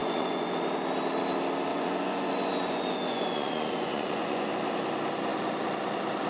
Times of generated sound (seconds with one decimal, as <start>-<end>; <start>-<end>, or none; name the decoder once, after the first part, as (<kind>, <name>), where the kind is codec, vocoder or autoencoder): 0.0-0.6 (vocoder, Vocos); 1.7-4.5